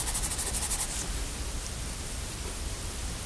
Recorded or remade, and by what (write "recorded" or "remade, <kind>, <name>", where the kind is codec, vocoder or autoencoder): recorded